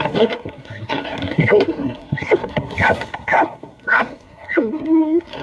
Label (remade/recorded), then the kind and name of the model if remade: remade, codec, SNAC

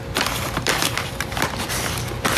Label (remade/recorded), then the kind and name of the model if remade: remade, vocoder, BigVGAN v2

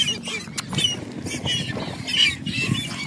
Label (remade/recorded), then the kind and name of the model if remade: recorded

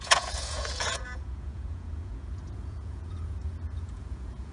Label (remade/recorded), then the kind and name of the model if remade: remade, vocoder, Vocos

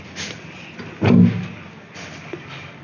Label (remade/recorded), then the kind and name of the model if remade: recorded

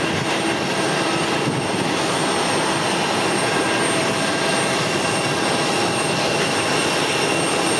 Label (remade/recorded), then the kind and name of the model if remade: recorded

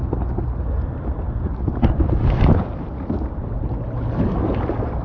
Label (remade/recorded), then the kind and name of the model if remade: recorded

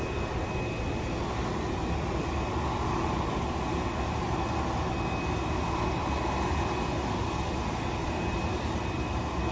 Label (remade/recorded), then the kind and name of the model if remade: recorded